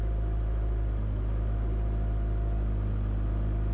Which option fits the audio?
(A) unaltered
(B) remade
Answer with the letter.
A